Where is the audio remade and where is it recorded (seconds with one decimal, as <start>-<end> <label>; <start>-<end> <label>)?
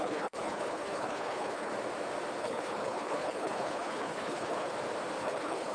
0.0-1.7 remade; 1.7-2.4 recorded; 2.4-4.7 remade; 4.7-5.2 recorded; 5.2-5.7 remade